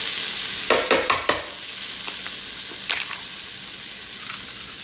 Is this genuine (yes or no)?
yes